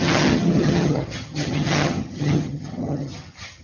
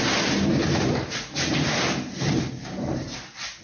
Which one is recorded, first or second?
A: second